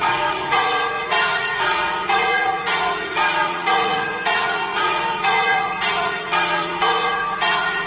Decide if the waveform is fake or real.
fake